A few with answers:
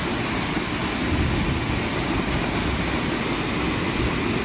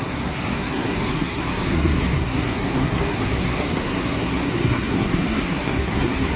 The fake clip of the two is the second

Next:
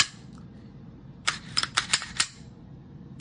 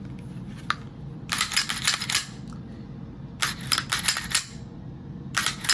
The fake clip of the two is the first